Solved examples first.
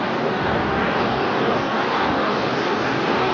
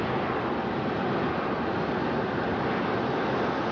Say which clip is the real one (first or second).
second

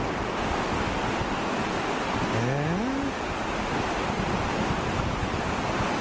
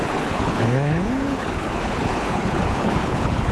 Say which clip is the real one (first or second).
first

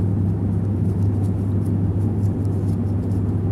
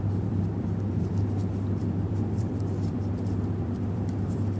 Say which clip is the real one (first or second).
first